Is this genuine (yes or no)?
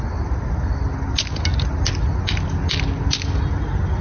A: yes